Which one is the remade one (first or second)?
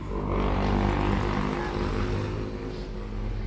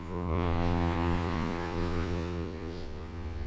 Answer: second